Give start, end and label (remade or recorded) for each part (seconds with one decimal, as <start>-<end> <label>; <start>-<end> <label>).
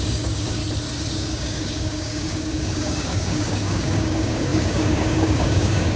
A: 0.0-0.6 remade; 0.6-1.1 recorded; 1.1-6.0 remade